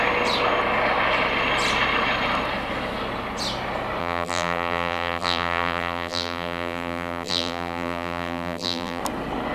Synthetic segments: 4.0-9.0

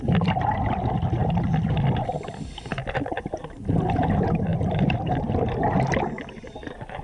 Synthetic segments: 4.5-5.3